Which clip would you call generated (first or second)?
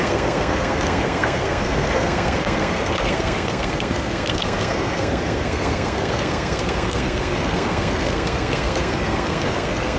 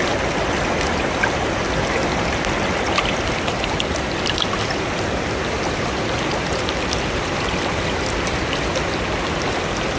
first